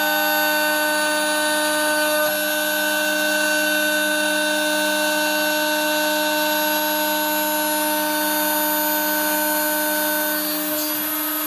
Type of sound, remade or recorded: recorded